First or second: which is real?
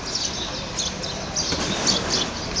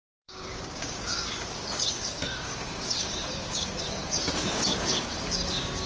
first